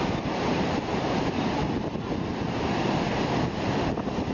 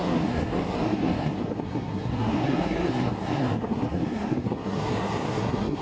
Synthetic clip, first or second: second